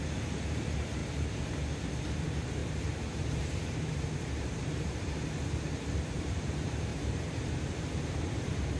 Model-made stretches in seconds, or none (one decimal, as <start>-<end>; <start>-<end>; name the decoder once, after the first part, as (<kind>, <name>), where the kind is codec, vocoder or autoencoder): 0.0-1.0 (vocoder, BigVGAN v2); 2.2-8.8